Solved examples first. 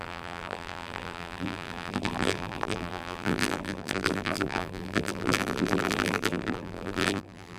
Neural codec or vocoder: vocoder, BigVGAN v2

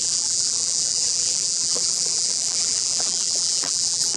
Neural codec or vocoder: vocoder, BigVGAN v2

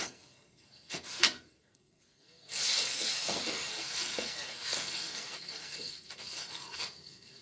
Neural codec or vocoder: codec, SNAC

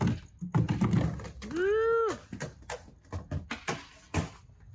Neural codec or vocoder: none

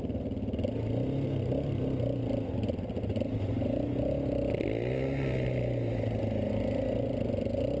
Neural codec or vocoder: none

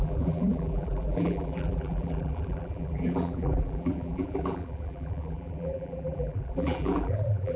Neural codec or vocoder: vocoder, BigVGAN v2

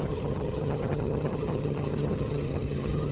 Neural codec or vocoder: vocoder, HiFi-GAN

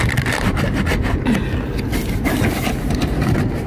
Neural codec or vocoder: none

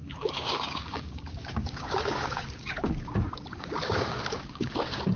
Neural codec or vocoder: codec, DAC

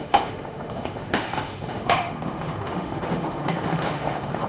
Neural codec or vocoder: autoencoder, DAC-VAE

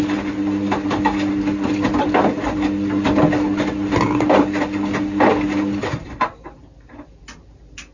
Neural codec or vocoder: none